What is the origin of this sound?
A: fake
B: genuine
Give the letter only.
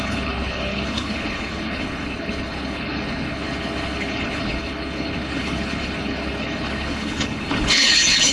A